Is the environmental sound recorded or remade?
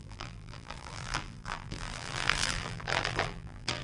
remade